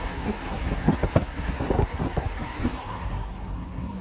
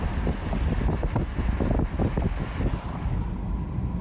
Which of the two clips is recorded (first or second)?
second